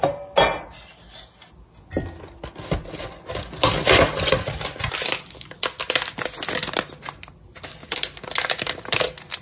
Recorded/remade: recorded